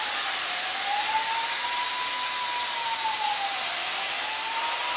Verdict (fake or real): real